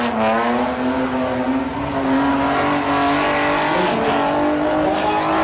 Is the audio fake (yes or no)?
no